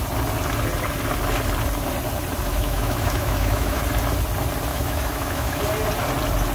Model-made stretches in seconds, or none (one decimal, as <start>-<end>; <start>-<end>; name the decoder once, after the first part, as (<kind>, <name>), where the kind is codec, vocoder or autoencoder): 2.5-3.8 (autoencoder, DAC-VAE); 4.7-5.6